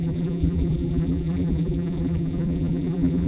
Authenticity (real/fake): fake